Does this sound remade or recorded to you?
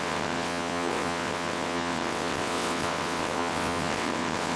remade